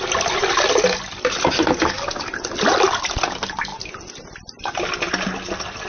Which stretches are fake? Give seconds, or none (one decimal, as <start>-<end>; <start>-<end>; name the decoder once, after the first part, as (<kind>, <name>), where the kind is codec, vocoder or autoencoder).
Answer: none